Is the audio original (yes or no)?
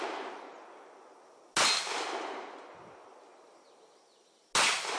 yes